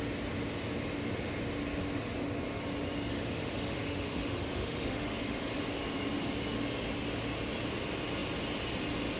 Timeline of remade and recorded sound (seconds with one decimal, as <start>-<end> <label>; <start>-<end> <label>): 0.0-3.1 recorded; 3.1-5.5 remade; 5.5-9.2 recorded